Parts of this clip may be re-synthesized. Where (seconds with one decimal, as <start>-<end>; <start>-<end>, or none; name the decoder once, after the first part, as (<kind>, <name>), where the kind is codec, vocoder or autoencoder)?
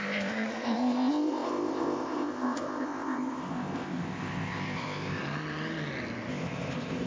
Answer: 0.0-5.2 (codec, ZipCodec); 6.3-7.1